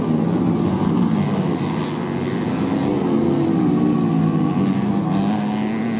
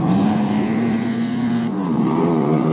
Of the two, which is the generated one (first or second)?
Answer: second